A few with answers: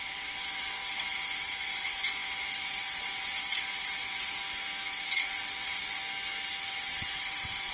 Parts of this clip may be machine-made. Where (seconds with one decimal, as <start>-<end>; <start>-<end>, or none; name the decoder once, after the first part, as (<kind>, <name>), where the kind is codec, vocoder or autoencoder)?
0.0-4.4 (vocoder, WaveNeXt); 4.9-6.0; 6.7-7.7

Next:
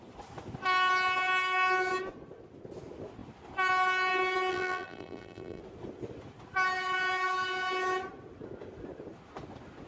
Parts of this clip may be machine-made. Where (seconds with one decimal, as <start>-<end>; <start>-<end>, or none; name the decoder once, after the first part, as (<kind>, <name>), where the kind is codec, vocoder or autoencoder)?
4.5-5.6 (vocoder, BigVGAN v2)

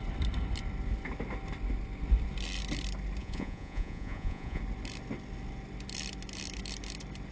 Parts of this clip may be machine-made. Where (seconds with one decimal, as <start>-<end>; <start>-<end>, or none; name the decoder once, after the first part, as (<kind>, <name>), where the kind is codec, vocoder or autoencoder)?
3.2-4.6 (vocoder, Vocos)